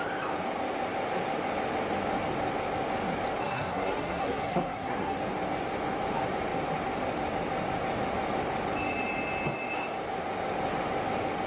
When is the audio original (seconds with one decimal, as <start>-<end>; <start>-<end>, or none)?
0.0-3.4; 5.2-11.5